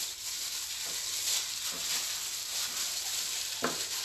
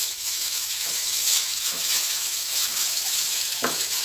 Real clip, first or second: first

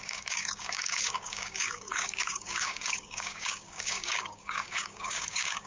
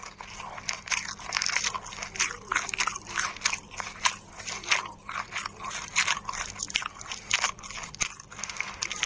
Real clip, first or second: second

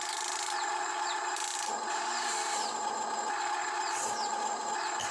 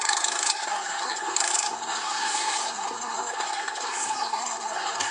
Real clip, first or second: first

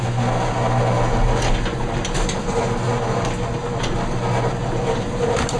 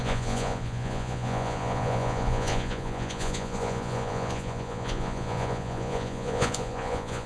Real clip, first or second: first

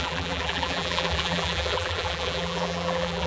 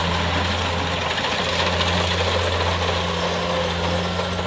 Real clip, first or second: second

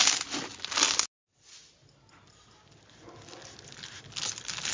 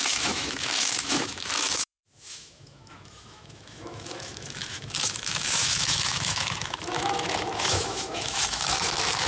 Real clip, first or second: first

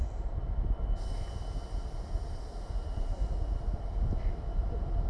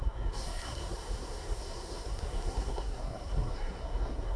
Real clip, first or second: first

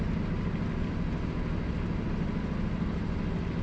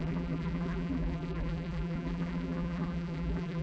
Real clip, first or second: first